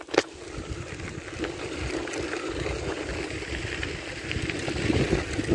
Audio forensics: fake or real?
fake